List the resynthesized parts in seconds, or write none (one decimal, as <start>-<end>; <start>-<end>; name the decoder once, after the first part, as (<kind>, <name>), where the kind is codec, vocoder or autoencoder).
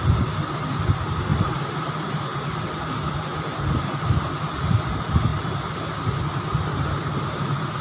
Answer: 1.3-1.9 (vocoder, BigVGAN v2)